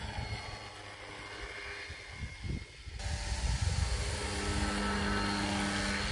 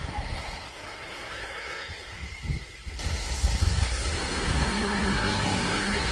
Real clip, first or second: first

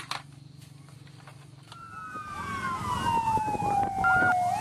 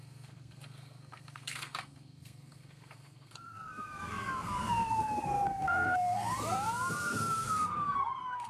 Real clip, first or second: first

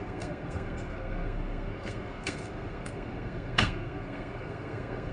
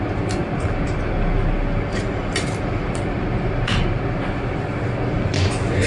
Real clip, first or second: second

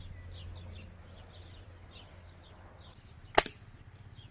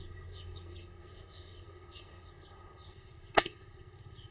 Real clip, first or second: first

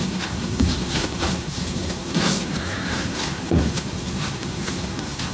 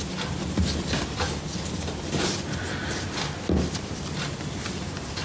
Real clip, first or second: second